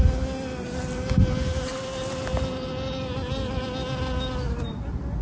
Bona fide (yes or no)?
yes